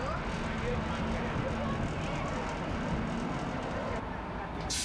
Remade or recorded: recorded